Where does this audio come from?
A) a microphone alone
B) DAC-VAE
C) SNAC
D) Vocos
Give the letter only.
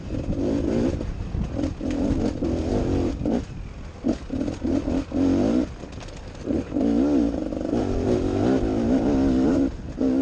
A